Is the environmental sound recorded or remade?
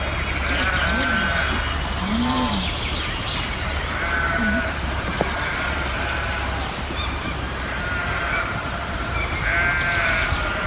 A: remade